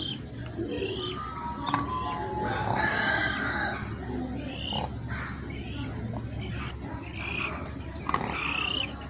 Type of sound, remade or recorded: recorded